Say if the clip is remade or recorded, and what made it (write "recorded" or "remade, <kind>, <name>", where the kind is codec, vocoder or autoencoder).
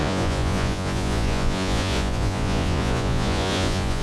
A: remade, vocoder, Vocos